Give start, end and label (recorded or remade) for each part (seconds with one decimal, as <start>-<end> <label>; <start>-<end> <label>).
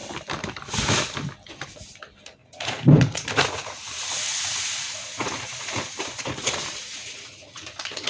0.0-2.4 recorded; 2.4-6.5 remade; 6.5-6.9 recorded; 6.9-8.1 remade